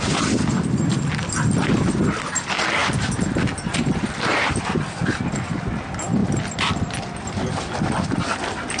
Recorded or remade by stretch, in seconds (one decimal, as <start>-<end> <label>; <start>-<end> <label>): 0.0-4.3 recorded; 4.3-5.3 remade; 5.3-6.2 recorded; 6.2-7.5 remade; 7.5-8.8 recorded